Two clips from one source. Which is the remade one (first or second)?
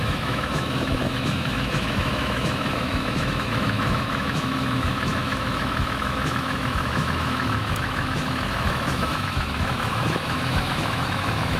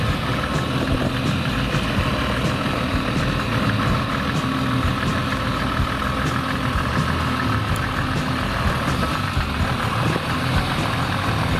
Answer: first